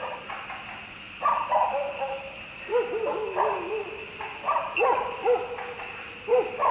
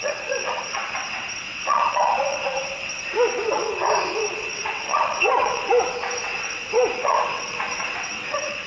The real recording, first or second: first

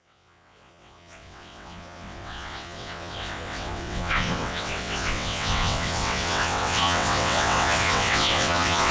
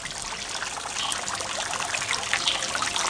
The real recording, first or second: second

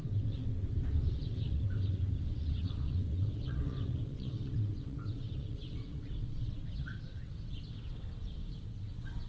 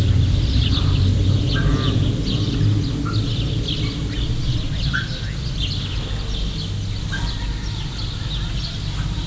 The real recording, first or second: second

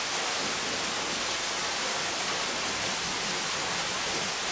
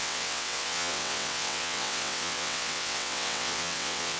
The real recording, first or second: first